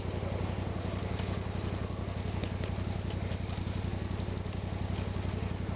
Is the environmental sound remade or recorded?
recorded